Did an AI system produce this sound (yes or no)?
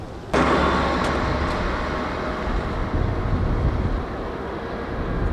no